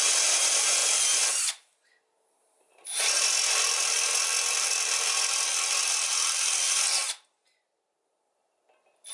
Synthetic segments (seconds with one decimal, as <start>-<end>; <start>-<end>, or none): none